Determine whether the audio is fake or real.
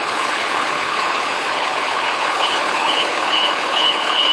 fake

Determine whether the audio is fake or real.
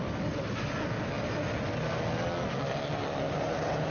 real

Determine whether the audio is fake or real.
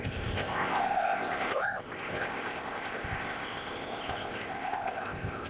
fake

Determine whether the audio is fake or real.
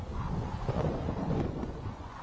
fake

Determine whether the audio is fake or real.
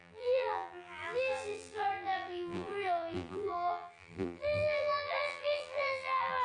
fake